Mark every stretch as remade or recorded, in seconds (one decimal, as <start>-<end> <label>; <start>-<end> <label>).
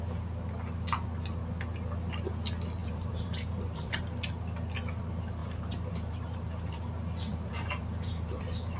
0.0-2.8 recorded; 2.8-4.0 remade; 4.0-5.4 recorded; 5.4-6.8 remade; 6.8-7.3 recorded; 7.3-8.8 remade